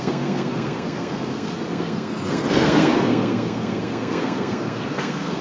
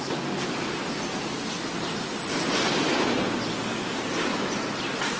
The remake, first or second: first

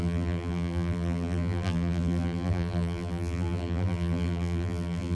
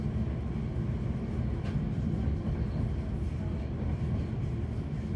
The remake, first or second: first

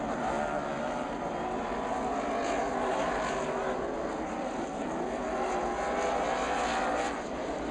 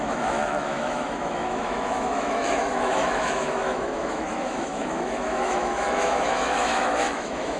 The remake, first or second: second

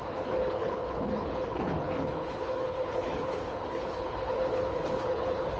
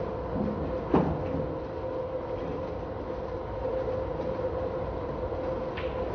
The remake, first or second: first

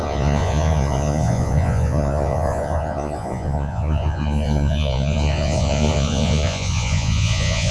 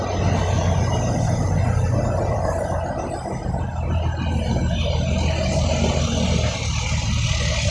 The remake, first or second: first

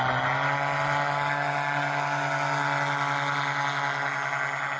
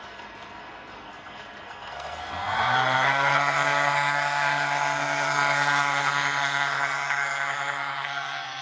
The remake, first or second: second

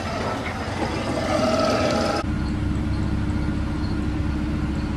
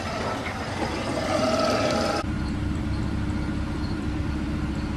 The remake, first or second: second